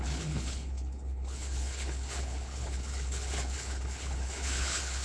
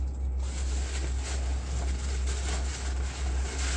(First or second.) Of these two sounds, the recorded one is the second